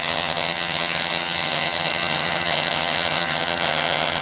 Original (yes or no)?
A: no